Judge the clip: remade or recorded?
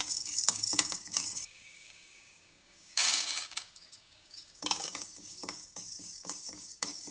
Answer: remade